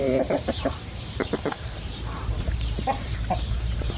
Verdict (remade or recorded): remade